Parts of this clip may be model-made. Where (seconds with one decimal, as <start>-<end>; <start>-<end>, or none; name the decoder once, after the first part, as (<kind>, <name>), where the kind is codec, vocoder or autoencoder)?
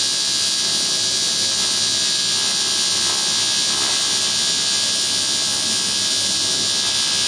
none